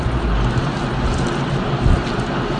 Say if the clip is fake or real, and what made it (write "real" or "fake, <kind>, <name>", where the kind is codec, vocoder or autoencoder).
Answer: real